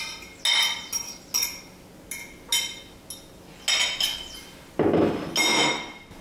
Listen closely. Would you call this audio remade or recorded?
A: recorded